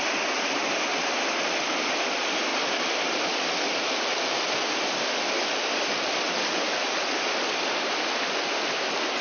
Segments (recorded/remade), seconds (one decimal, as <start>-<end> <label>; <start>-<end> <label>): 0.0-2.5 recorded; 2.5-6.9 remade; 6.9-9.2 recorded